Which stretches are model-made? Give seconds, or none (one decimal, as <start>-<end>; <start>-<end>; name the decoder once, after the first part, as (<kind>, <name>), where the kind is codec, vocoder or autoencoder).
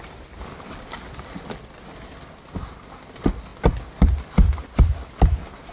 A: none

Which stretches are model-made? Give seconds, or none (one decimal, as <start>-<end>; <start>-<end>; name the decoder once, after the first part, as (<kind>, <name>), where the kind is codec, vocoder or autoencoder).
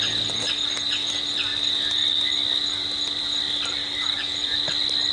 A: 3.8-4.5 (vocoder, BigVGAN v2)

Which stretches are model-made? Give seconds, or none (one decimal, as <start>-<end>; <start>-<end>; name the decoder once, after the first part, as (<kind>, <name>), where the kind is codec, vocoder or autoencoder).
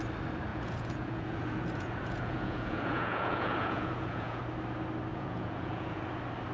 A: 0.5-4.4 (vocoder, Vocos); 5.1-6.0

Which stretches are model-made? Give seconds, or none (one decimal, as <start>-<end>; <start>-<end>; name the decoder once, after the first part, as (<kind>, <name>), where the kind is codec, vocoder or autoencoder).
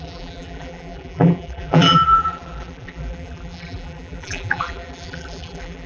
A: 0.0-5.9 (vocoder, BigVGAN v2)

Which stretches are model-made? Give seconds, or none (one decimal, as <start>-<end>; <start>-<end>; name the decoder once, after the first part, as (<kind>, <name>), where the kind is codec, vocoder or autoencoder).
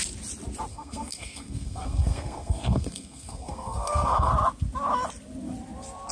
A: 0.7-4.3 (codec, SNAC)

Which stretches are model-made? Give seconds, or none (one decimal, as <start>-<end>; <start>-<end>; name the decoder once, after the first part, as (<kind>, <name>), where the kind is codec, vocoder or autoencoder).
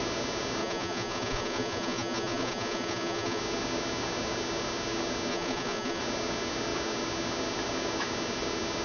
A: 0.6-3.4 (vocoder, Vocos); 5.3-6.0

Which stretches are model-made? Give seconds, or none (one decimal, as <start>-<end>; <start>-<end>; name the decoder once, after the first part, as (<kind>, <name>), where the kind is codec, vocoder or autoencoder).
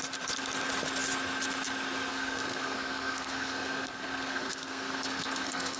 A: 2.1-5.8 (codec, SNAC)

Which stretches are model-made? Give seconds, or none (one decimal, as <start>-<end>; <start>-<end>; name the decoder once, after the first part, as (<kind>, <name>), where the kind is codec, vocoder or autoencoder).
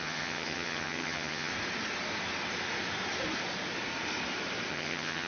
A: 0.0-1.5 (vocoder, HiFi-GAN); 4.7-5.3